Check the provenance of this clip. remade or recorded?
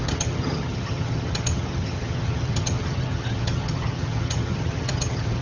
remade